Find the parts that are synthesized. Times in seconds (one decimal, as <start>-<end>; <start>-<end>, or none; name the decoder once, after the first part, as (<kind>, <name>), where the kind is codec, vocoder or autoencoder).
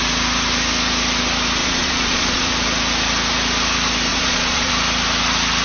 1.6-2.5 (vocoder, Vocos); 4.1-4.7